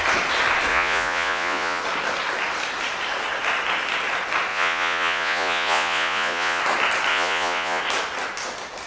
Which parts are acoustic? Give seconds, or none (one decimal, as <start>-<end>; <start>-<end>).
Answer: 0.0-0.7; 1.8-4.5; 6.6-7.1; 7.8-8.9